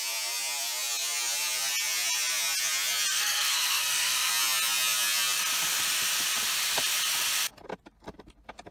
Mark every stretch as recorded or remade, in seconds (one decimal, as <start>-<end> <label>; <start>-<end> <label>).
0.0-3.1 recorded; 3.1-4.3 remade; 4.3-8.7 recorded